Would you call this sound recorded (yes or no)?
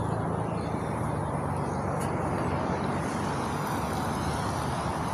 yes